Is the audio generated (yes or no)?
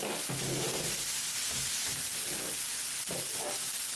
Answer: no